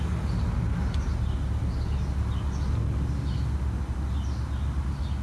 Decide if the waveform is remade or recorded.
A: recorded